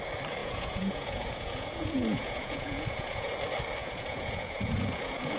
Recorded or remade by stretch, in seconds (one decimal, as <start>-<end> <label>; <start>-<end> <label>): 0.0-0.4 recorded; 0.4-3.3 remade; 3.3-3.8 recorded; 3.8-5.4 remade